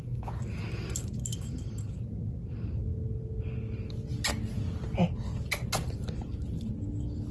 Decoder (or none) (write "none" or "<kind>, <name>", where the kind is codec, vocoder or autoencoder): none